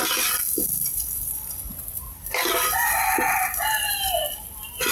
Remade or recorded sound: remade